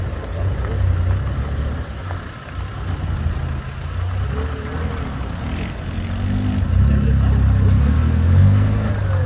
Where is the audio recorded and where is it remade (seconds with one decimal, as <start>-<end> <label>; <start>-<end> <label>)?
0.0-7.8 recorded; 7.8-8.9 remade; 8.9-9.3 recorded